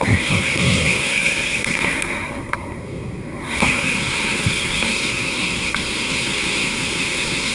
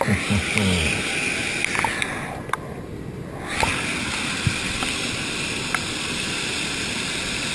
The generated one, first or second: first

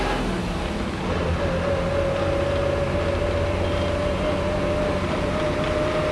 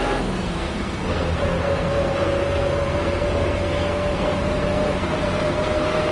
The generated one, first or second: second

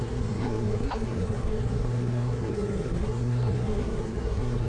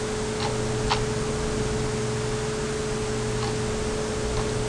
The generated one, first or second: first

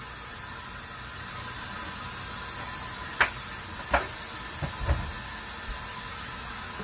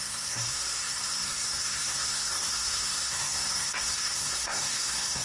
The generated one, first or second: second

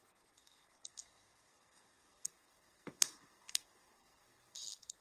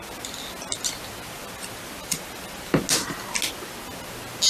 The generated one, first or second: first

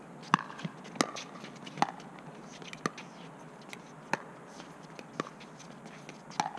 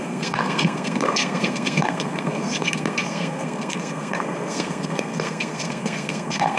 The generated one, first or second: second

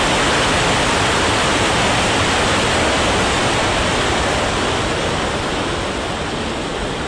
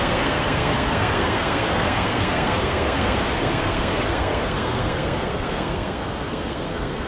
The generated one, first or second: second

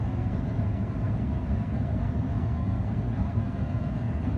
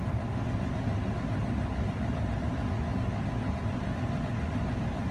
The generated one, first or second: first